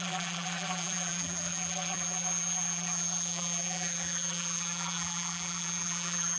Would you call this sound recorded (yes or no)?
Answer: no